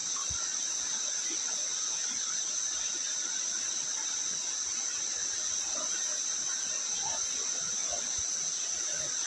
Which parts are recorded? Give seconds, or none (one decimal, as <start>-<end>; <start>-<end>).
0.0-3.0; 4.4-9.3